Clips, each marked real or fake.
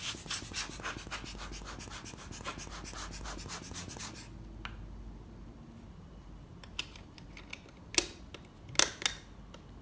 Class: real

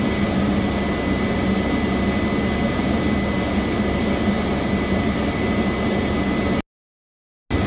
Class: real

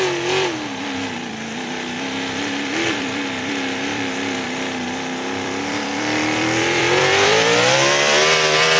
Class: fake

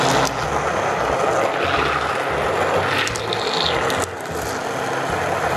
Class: real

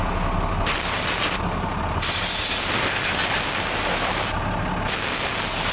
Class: real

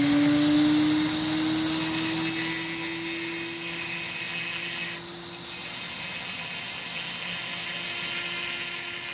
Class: real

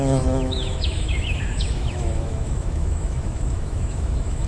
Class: fake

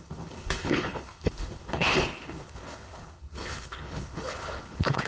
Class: fake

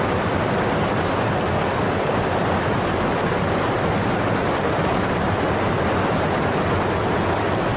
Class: real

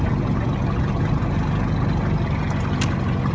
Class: real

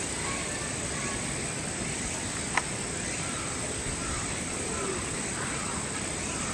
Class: real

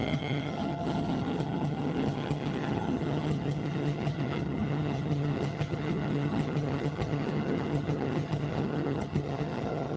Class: fake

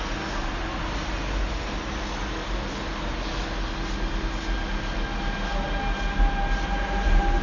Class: real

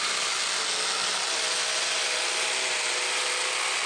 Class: real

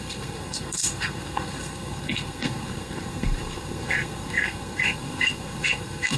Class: fake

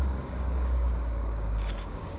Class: fake